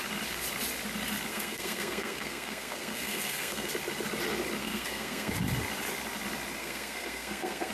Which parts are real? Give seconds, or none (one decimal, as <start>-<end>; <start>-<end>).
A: 0.0-1.3; 3.7-4.6; 5.3-6.6